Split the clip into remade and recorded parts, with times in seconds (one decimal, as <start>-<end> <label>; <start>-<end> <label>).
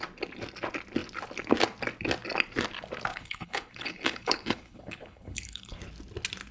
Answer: 0.0-3.1 recorded; 3.1-5.8 remade; 5.8-6.5 recorded